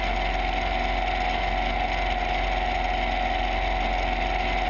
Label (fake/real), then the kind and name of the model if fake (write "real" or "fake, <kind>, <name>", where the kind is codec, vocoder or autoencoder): real